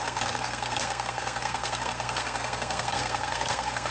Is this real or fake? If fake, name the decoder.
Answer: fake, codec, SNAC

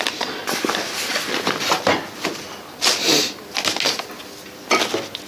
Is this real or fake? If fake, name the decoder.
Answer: real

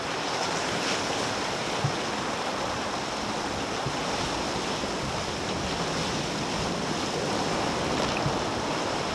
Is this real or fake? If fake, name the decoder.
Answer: real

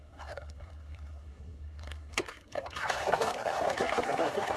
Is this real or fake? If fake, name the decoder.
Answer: fake, codec, SNAC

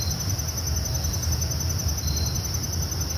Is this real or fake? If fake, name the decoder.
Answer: real